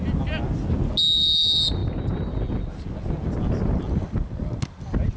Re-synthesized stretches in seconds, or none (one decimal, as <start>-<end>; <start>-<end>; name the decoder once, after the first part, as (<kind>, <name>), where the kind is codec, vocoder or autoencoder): none